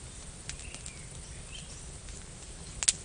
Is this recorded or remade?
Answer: recorded